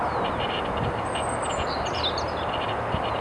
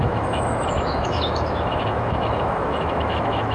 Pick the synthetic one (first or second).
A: second